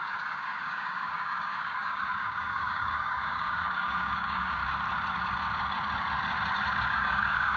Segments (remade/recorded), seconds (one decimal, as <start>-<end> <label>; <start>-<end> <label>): 0.0-4.6 remade; 4.6-6.9 recorded; 6.9-7.6 remade